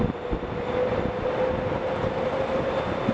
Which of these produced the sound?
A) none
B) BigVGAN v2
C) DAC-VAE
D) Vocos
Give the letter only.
A